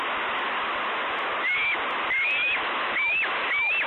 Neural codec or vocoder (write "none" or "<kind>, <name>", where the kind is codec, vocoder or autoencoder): none